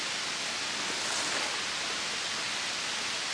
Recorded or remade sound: recorded